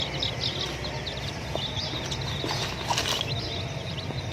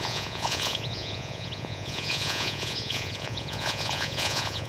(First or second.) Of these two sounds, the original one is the first